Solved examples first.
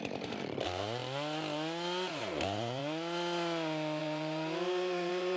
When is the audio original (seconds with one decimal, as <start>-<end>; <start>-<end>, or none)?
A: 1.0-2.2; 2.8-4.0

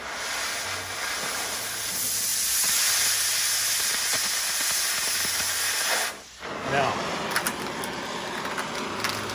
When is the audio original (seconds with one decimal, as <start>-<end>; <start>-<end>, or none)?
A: 0.0-9.3

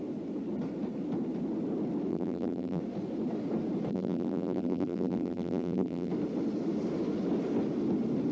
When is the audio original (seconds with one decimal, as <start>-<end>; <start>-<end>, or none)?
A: 0.0-2.1; 2.8-3.9; 6.1-8.3